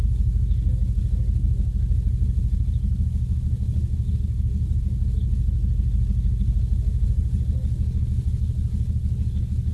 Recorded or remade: remade